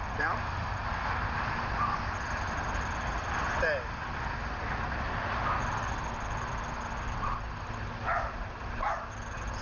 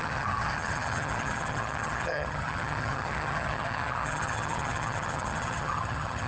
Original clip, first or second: first